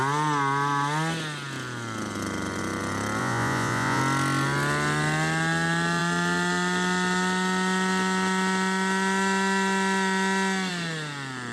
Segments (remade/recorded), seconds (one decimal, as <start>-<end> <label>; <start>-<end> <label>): 0.0-3.2 recorded; 3.2-4.0 remade; 4.0-11.5 recorded